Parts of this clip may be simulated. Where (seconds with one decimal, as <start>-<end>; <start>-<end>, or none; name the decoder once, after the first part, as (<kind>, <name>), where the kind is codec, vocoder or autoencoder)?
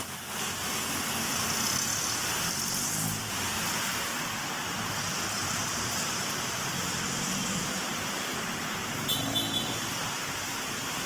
5.4-9.8 (vocoder, BigVGAN v2)